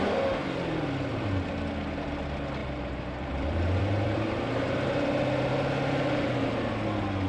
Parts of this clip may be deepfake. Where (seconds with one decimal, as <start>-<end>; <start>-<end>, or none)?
0.4-1.4; 2.6-5.5